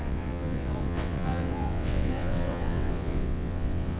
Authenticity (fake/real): fake